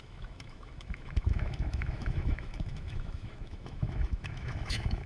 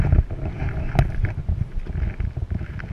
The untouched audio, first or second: second